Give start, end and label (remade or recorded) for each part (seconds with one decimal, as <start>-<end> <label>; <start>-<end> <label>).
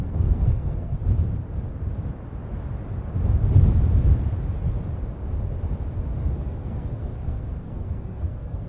0.0-1.0 remade; 1.0-6.2 recorded; 6.2-8.7 remade